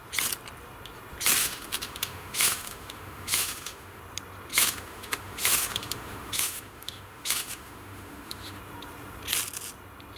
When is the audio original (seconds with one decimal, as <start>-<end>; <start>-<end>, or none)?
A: 0.0-1.4; 4.0-4.5; 8.6-10.2